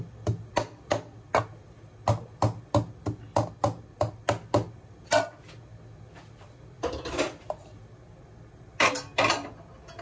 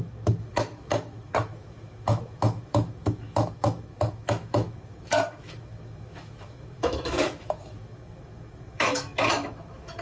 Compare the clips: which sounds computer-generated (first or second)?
second